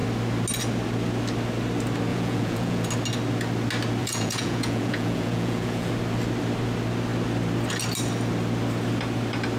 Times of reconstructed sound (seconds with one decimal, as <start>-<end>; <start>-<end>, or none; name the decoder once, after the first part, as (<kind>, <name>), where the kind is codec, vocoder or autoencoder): 2.1-2.9 (vocoder, Vocos); 4.0-5.9